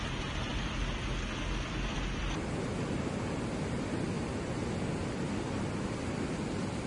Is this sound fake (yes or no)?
no